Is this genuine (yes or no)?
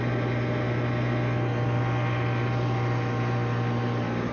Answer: yes